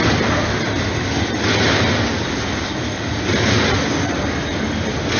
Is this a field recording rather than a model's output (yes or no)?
yes